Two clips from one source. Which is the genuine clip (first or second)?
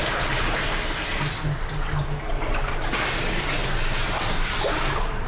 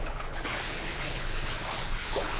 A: first